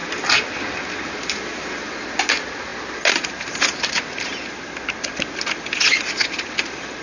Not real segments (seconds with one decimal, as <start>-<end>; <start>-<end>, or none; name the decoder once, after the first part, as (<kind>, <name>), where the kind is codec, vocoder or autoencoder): none